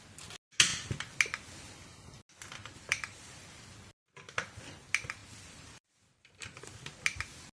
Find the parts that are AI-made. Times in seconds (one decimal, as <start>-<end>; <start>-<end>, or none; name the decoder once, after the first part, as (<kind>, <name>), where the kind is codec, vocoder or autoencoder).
2.6-3.4 (vocoder, BigVGAN v2); 5.2-6.8